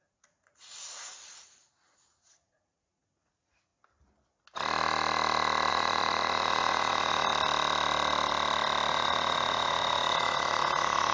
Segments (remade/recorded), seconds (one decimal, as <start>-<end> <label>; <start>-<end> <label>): 0.0-3.7 remade; 3.7-5.7 recorded; 5.7-7.3 remade; 7.3-8.9 recorded; 8.9-11.1 remade

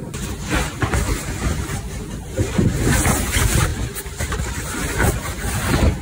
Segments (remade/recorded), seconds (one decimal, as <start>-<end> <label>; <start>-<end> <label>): 0.0-6.0 recorded

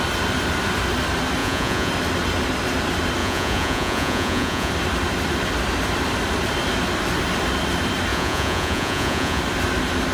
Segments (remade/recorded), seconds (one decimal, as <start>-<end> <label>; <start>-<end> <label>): 0.0-1.4 recorded; 1.4-1.9 remade; 1.9-3.2 recorded; 3.2-4.7 remade; 4.7-8.1 recorded; 8.1-9.4 remade; 9.4-10.1 recorded

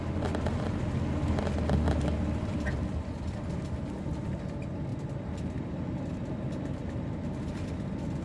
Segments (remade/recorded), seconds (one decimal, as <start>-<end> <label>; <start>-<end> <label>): 0.0-8.2 recorded

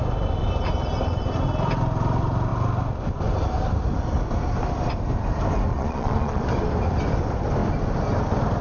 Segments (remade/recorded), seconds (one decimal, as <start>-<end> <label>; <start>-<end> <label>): 0.0-5.7 recorded; 5.7-6.4 remade; 6.4-8.6 recorded